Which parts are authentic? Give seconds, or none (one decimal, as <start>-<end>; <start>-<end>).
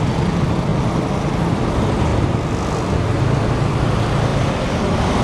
0.0-5.2